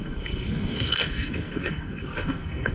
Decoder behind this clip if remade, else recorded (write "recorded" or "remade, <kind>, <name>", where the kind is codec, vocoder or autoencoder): remade, codec, SNAC